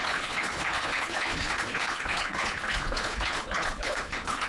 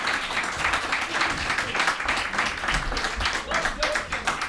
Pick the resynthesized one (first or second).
first